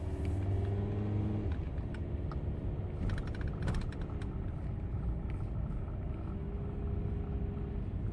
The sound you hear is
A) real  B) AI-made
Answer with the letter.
A